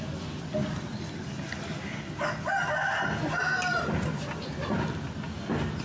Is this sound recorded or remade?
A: recorded